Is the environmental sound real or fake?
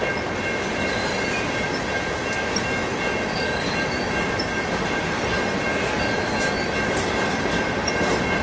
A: real